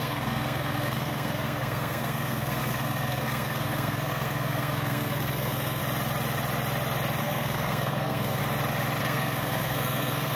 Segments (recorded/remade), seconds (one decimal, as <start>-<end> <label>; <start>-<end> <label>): 0.0-5.8 remade; 5.8-7.2 recorded; 7.2-8.4 remade; 8.4-9.0 recorded; 9.0-10.4 remade